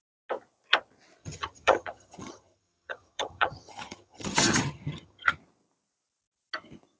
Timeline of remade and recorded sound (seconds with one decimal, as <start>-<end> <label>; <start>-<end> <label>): 0.0-1.2 recorded; 1.2-5.4 remade; 5.4-7.0 recorded